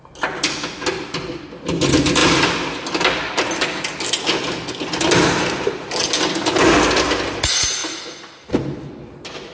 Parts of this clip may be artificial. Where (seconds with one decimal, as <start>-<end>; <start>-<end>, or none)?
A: none